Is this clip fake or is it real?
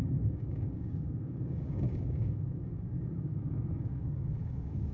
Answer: fake